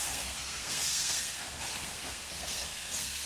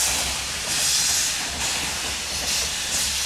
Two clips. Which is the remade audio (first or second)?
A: first